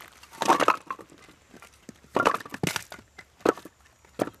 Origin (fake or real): real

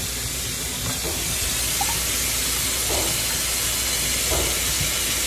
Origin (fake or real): real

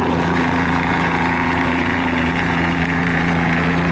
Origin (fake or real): fake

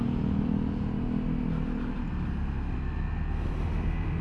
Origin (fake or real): real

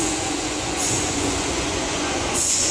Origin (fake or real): fake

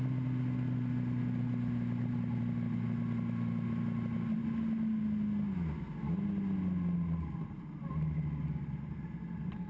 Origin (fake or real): real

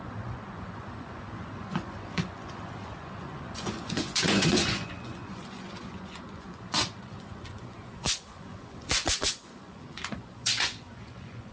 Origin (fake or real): fake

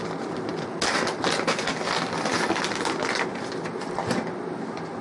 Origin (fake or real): real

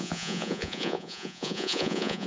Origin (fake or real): fake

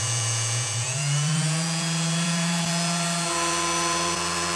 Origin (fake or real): fake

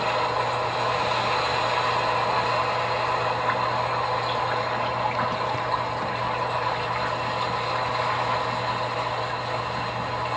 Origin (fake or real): real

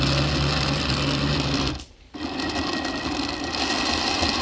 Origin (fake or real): real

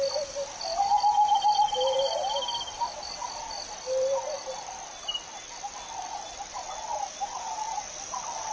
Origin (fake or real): real